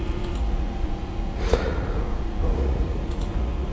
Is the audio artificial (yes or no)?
yes